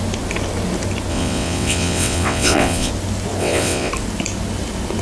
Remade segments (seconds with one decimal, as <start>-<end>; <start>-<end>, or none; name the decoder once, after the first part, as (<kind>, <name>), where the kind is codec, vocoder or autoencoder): 1.1-2.9 (vocoder, WaveNeXt); 3.4-3.9